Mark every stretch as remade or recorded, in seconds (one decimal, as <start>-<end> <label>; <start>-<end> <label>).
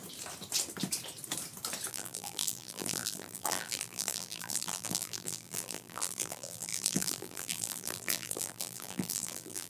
0.0-1.9 recorded; 1.9-9.7 remade